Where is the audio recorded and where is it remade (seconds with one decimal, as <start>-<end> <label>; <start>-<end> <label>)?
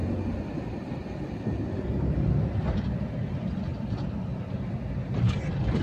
0.0-0.5 recorded; 0.5-3.7 remade; 3.7-5.8 recorded